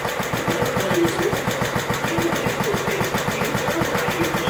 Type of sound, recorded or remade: recorded